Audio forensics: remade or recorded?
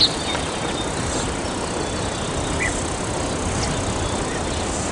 recorded